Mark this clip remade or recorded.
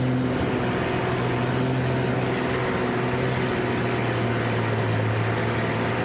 recorded